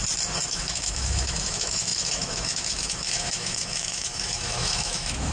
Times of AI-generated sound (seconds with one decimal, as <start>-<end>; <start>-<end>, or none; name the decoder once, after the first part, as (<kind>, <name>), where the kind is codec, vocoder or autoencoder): 0.5-5.3 (autoencoder, DAC-VAE)